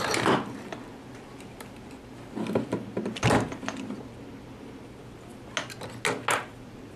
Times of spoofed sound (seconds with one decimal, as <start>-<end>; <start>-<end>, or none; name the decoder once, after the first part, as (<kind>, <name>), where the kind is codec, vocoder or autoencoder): none